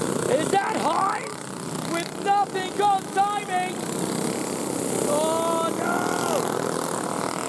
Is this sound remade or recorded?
recorded